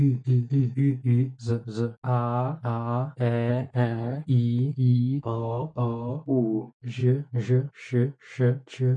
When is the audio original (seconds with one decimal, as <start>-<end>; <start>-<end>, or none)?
0.0-3.5; 4.3-4.7; 6.1-9.0

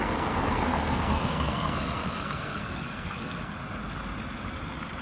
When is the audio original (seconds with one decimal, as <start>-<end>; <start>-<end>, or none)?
3.6-5.0

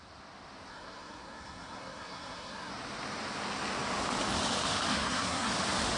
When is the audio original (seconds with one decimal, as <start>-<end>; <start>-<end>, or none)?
0.0-0.7; 2.7-4.9; 5.5-6.0

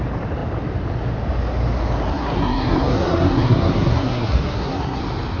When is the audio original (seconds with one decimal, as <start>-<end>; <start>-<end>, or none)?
0.0-2.1; 5.0-5.4

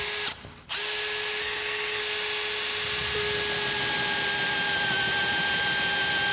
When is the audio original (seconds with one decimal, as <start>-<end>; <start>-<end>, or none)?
0.0-1.4; 2.0-6.3

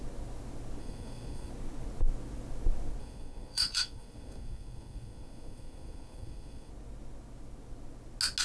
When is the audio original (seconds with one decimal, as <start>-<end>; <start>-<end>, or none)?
0.0-0.8; 1.5-3.0; 6.7-8.4

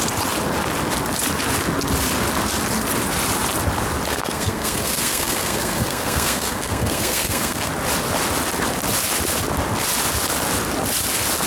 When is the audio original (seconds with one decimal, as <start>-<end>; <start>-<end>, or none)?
0.0-4.1; 7.7-11.5